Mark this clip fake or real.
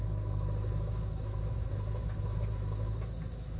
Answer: fake